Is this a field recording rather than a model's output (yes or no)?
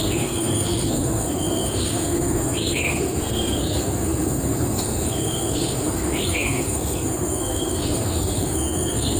no